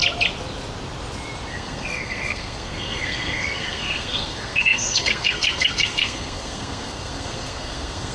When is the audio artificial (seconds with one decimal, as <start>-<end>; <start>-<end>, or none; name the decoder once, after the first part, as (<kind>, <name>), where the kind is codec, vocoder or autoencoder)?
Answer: 1.5-8.1 (codec, SNAC)